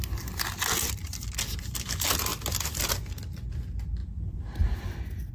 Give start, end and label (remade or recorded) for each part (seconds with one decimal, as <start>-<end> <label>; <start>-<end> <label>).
0.0-5.3 recorded

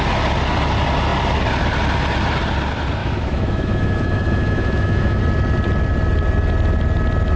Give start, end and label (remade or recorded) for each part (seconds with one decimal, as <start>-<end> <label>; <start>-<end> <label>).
0.0-3.0 recorded; 3.0-5.2 remade; 5.2-7.4 recorded